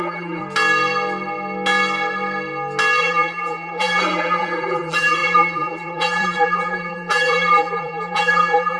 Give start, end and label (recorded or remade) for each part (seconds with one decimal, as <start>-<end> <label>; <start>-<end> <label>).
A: 0.0-0.4 remade; 0.4-3.0 recorded; 3.0-8.8 remade